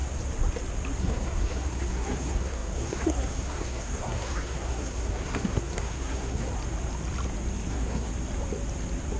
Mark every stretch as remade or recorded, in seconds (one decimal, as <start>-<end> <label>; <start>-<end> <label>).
0.0-1.0 recorded; 1.0-6.5 remade; 6.5-7.7 recorded; 7.7-8.1 remade; 8.1-9.2 recorded